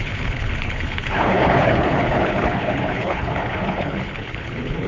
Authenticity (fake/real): fake